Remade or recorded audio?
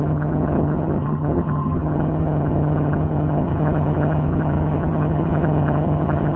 remade